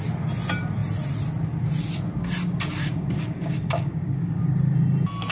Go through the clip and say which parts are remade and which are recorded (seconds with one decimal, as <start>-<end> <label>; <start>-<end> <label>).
0.0-2.8 recorded; 2.8-4.4 remade; 4.4-5.3 recorded